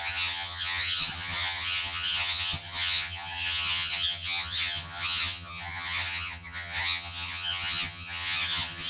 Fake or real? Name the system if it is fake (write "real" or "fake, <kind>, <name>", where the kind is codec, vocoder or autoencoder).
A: fake, vocoder, HiFi-GAN